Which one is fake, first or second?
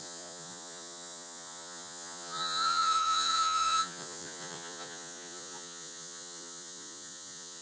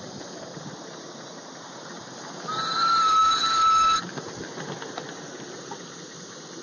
first